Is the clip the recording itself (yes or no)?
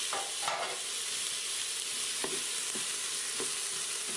yes